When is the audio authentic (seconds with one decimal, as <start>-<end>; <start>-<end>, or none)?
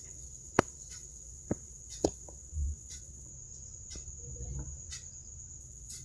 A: 3.3-5.6